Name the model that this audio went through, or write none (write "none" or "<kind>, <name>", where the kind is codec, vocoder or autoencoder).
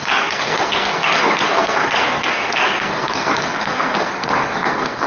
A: codec, SNAC